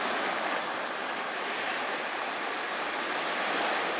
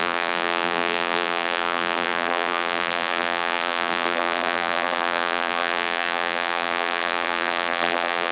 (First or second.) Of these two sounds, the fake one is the second